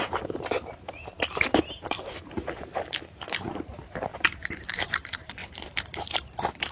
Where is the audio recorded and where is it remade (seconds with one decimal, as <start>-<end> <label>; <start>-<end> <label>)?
0.0-6.7 remade